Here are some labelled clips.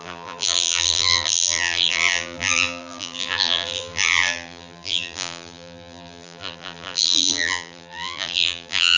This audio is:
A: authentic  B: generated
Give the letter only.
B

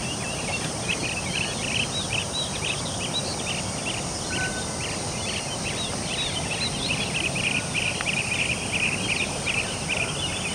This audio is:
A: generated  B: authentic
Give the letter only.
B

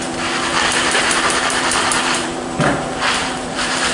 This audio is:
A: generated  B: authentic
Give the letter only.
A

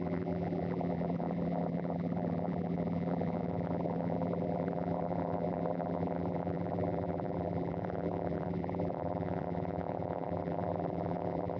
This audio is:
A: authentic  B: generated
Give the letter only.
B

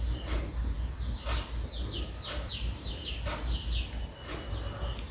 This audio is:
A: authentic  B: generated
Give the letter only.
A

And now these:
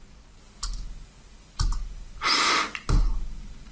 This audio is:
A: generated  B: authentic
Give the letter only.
B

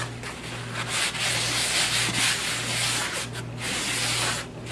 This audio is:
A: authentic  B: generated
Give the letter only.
A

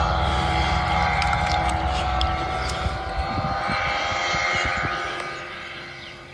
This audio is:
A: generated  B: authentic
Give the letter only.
A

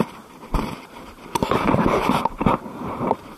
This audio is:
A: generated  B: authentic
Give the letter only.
A